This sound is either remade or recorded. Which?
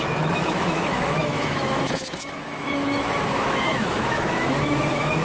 remade